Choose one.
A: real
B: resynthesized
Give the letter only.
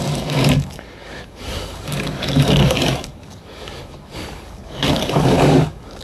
B